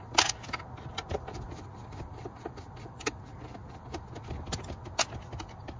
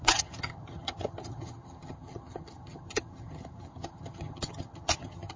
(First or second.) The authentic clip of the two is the first